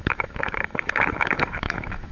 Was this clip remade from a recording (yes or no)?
yes